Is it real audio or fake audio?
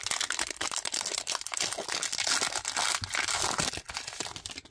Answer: real